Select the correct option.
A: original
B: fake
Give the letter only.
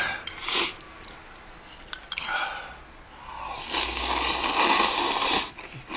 A